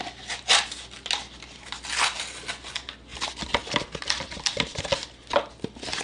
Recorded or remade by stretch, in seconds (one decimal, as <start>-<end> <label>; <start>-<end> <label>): 0.0-6.0 recorded